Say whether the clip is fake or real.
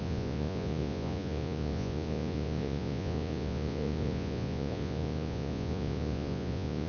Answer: fake